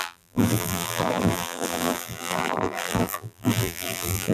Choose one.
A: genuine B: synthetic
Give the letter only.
B